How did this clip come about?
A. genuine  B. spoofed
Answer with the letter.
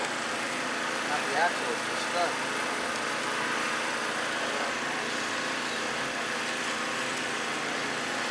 A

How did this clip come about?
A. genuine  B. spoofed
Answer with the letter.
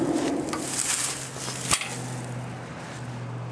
A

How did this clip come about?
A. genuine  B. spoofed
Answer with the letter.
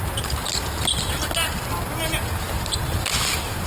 A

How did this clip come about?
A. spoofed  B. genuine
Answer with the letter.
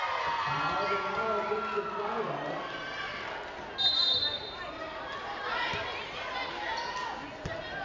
B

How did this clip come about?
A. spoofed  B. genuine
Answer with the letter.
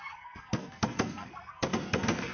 A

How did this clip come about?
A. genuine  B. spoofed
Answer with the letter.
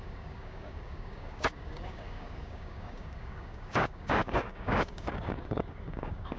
B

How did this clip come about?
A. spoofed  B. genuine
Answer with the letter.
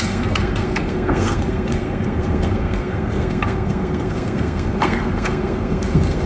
A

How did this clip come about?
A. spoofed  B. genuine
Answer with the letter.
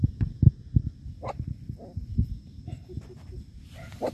B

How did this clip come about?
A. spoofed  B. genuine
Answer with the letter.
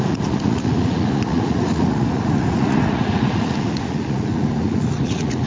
A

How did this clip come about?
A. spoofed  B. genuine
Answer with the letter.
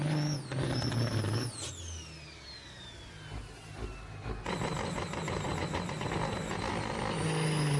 B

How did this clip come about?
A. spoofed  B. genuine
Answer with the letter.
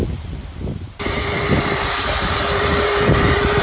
A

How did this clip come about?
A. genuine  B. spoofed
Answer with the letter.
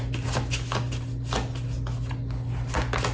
A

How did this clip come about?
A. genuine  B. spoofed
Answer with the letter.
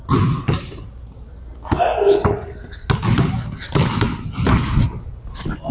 A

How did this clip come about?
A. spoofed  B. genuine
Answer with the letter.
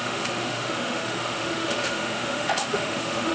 A